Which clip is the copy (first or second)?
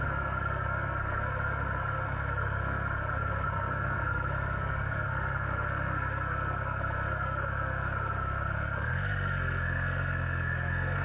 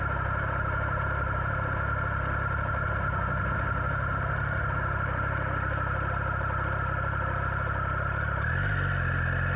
first